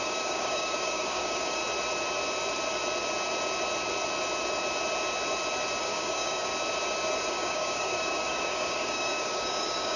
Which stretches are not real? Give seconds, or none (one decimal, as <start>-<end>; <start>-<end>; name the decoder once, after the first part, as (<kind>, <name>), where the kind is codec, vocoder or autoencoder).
0.0-1.6 (codec, DAC); 5.8-6.5; 7.3-10.0